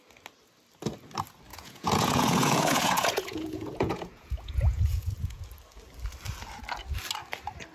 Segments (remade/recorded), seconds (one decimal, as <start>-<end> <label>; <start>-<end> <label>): 0.0-1.5 recorded; 1.5-5.4 remade; 5.4-7.7 recorded

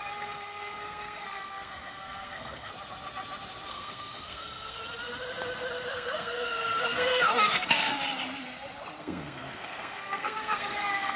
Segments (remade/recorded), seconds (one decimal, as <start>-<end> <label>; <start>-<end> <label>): 0.0-2.7 remade; 2.7-3.7 recorded; 3.7-4.8 remade; 4.8-5.9 recorded; 5.9-7.9 remade; 7.9-9.0 recorded; 9.0-11.2 remade

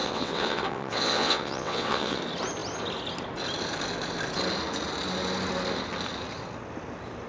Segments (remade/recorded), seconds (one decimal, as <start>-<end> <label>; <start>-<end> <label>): 0.0-2.2 remade; 2.2-7.3 recorded

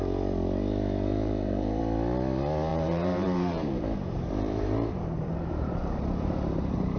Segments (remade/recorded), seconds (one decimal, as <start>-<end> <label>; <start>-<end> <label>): 0.0-1.1 recorded; 1.1-1.8 remade; 1.8-2.7 recorded; 2.7-7.0 remade

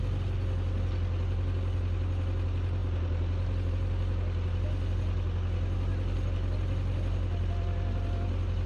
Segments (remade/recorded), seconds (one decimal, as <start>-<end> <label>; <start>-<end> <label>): 0.0-8.7 recorded

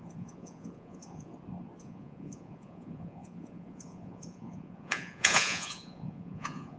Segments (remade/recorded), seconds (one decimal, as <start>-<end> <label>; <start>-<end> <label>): 0.0-1.3 remade; 1.3-1.8 recorded; 1.8-6.8 remade

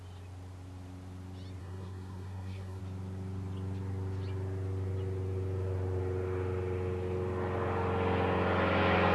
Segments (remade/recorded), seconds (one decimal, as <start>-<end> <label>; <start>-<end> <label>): 0.0-1.6 recorded; 1.6-2.8 remade; 2.8-9.1 recorded